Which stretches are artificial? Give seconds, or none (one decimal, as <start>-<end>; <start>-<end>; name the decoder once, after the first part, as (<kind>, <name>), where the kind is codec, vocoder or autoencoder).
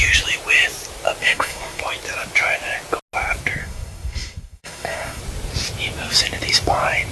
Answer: 1.2-1.8 (codec, SNAC); 3.6-5.2